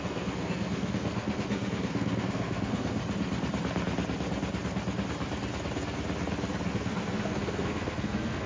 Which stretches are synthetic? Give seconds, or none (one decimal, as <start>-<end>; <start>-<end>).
0.0-3.0; 6.7-8.5